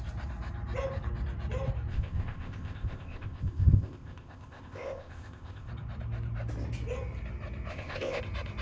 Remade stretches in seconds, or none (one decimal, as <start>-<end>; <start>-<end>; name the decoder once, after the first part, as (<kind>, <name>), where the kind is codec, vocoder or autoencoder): 1.9-5.7 (codec, ZipCodec); 7.7-8.2